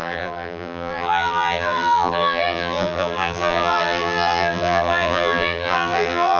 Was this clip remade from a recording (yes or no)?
yes